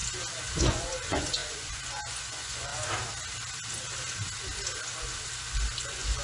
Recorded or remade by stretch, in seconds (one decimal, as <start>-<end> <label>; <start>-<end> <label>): 0.0-0.6 recorded; 0.6-2.7 remade; 2.7-5.8 recorded; 5.8-6.2 remade